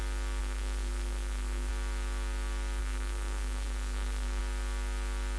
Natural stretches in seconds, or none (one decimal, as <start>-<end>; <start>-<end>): 0.0-0.4; 1.7-2.8; 4.4-5.4